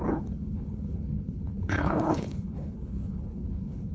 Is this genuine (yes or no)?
no